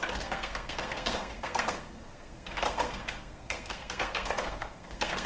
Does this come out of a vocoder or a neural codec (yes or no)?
yes